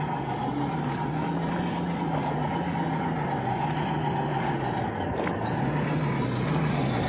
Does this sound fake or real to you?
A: real